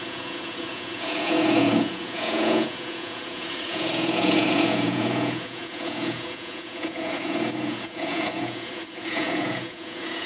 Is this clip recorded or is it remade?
remade